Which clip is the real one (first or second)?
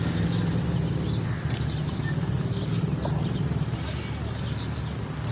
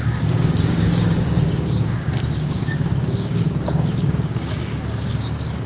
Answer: first